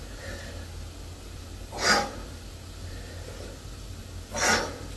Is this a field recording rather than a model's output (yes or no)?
yes